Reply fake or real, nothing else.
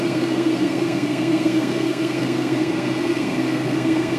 fake